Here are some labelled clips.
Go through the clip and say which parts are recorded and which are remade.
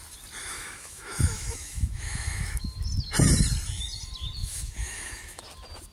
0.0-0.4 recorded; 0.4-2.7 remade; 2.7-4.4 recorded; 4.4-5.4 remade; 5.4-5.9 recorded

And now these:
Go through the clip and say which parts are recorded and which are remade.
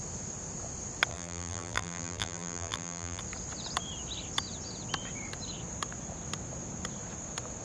0.0-1.1 recorded; 1.1-3.2 remade; 3.2-7.6 recorded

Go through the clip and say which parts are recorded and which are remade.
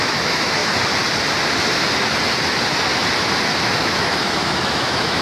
0.0-0.6 remade; 0.6-3.7 recorded; 3.7-5.2 remade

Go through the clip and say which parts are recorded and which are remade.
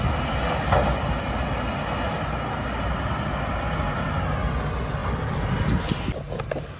0.0-6.8 recorded